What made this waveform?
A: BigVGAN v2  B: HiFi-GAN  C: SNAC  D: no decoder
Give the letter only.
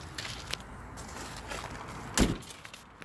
D